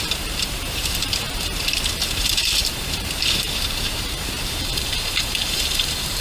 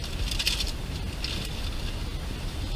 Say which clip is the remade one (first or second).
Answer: first